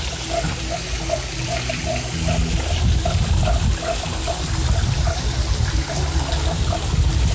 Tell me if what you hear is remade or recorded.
recorded